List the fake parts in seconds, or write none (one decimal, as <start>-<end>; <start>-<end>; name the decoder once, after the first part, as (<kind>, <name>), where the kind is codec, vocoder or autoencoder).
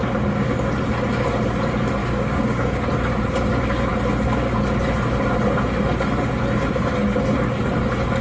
2.0-2.8 (codec, DAC)